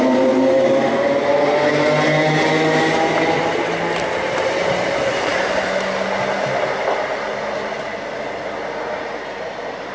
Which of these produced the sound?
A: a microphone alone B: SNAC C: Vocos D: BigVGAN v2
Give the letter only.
A